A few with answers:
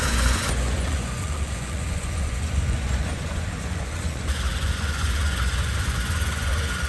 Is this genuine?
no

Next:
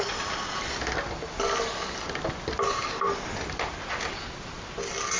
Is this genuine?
yes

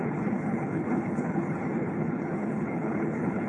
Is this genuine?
no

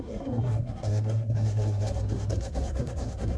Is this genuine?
no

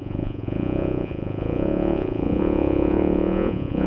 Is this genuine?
no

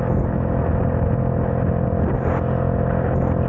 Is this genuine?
yes